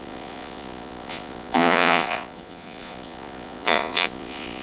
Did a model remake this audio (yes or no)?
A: yes